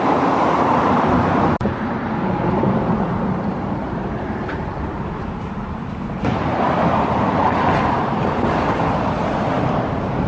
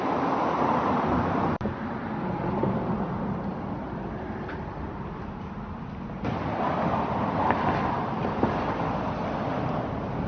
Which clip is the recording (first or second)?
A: second